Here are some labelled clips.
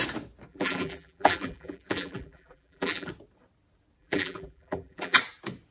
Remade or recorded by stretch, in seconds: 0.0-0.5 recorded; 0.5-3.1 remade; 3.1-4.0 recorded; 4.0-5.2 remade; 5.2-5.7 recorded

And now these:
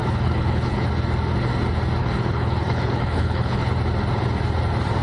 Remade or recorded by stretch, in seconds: 0.0-0.9 remade; 0.9-2.0 recorded; 2.0-3.7 remade; 3.7-5.0 recorded

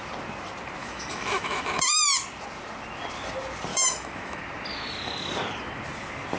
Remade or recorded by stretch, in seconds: 0.0-0.8 recorded; 0.8-2.0 remade; 2.0-3.7 recorded; 3.7-4.4 remade; 4.4-6.4 recorded

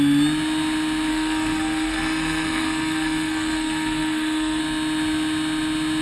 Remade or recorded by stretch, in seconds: 0.0-1.1 recorded; 1.1-4.6 remade; 4.6-6.0 recorded

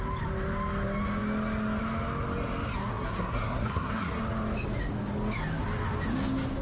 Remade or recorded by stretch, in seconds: 0.0-2.9 recorded; 2.9-4.2 remade; 4.2-6.6 recorded

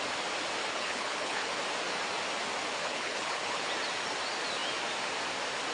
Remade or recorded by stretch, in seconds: 0.0-0.6 recorded; 0.6-1.5 remade; 1.5-2.8 recorded; 2.8-3.7 remade; 3.7-5.7 recorded

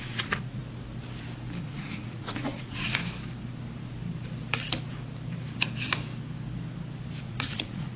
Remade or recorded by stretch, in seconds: 0.0-0.6 remade; 0.6-1.6 recorded; 1.6-3.0 remade; 3.0-7.2 recorded; 7.2-8.0 remade

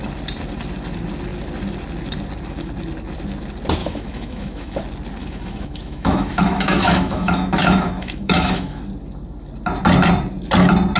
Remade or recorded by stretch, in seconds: 0.0-3.8 recorded; 3.8-4.8 remade; 4.8-5.2 recorded; 5.2-8.8 remade; 8.8-11.0 recorded